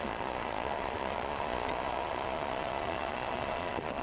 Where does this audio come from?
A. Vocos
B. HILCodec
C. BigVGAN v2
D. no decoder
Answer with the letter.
A